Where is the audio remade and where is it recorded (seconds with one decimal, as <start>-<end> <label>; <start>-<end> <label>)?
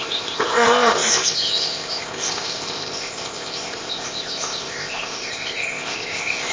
0.0-6.5 remade